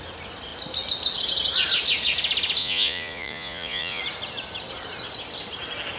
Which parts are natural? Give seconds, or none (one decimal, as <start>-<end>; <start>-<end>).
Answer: 0.0-2.6; 4.0-6.0